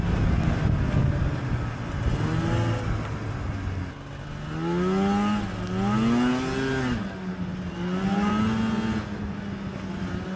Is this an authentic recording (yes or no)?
yes